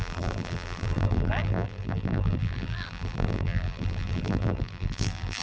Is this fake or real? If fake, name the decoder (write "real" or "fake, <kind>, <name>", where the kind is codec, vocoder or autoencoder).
fake, vocoder, BigVGAN v2